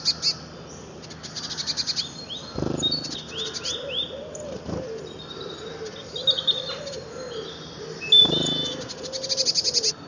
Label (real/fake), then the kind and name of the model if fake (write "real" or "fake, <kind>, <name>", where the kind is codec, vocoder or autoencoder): real